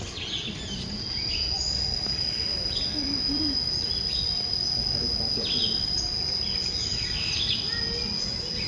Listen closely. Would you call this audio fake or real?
real